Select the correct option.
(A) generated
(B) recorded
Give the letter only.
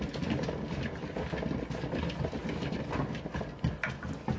B